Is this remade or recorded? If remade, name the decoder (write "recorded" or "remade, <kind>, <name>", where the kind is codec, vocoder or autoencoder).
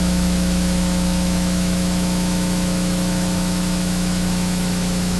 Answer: remade, autoencoder, DAC-VAE